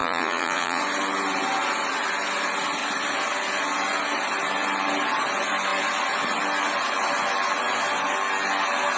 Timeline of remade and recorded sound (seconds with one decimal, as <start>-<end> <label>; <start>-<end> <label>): 0.0-0.8 remade; 0.8-9.0 recorded